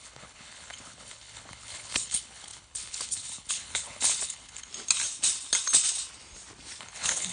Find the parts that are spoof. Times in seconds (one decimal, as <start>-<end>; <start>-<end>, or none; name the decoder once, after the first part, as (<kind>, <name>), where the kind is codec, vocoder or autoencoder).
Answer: 0.0-4.7 (codec, HILCodec); 6.8-7.3